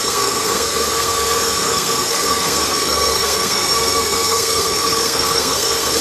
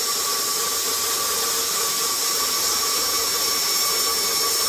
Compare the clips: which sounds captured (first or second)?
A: second